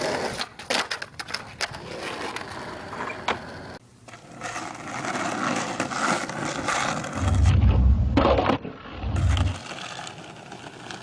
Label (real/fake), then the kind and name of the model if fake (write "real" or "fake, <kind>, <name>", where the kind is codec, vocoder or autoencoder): real